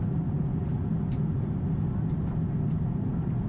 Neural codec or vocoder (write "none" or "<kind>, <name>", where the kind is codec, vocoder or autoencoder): none